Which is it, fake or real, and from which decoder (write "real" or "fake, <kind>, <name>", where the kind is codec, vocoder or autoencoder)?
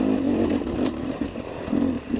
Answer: real